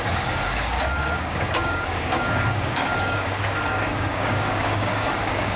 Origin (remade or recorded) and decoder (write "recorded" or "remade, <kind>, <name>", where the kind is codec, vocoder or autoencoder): remade, codec, DAC